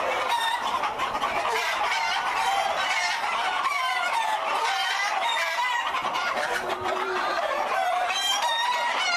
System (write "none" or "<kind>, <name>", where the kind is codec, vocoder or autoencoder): vocoder, BigVGAN v2